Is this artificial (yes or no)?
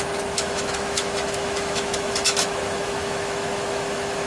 yes